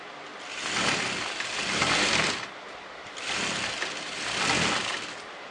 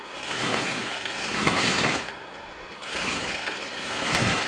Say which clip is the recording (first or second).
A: first